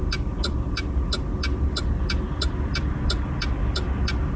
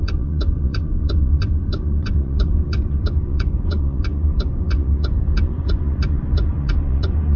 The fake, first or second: second